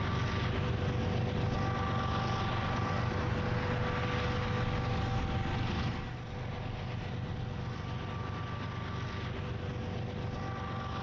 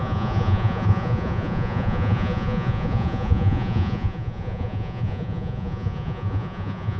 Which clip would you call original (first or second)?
first